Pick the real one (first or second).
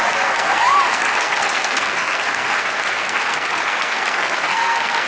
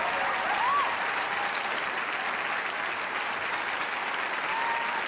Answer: second